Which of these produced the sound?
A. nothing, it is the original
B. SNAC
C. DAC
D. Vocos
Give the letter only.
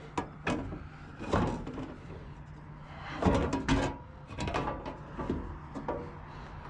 A